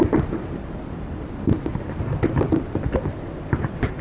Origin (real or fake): real